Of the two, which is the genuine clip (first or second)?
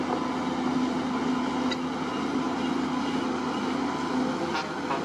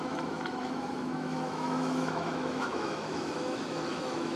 first